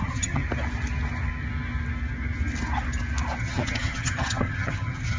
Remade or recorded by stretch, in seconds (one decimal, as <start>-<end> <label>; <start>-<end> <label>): 0.0-0.4 remade; 0.4-3.4 recorded; 3.4-5.2 remade